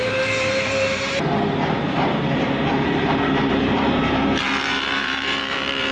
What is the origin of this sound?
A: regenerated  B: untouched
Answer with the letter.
A